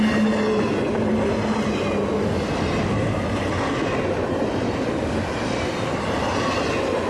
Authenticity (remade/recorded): recorded